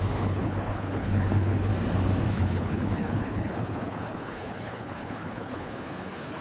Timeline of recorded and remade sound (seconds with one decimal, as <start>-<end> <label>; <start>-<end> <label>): 0.0-1.7 remade; 1.7-2.3 recorded; 2.3-6.4 remade

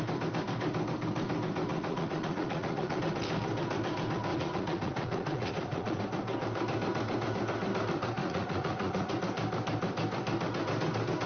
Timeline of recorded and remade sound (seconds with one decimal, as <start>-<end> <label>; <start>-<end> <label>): 0.0-1.7 recorded; 1.7-3.0 remade; 3.0-4.3 recorded; 4.3-6.0 remade; 6.0-8.2 recorded; 8.2-9.1 remade; 9.1-11.3 recorded